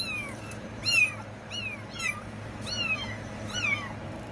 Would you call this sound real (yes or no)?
no